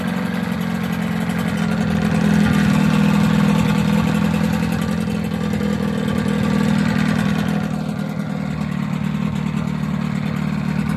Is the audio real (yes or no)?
yes